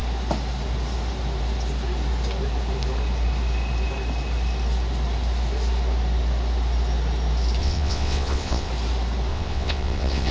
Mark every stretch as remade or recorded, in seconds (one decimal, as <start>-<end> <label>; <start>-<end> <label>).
0.0-7.6 recorded; 7.6-8.7 remade; 8.7-9.3 recorded; 9.3-10.3 remade